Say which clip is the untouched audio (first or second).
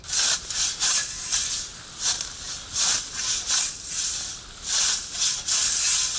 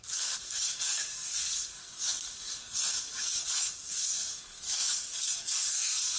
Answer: first